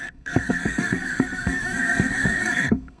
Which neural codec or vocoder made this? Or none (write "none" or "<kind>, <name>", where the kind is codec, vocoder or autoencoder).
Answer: codec, SNAC